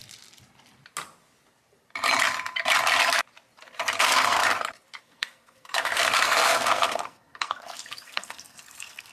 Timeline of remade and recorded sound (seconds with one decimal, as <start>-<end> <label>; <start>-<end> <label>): 0.0-4.0 recorded; 4.0-4.4 remade; 4.4-5.0 recorded; 5.0-9.1 remade